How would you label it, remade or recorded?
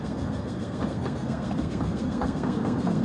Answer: remade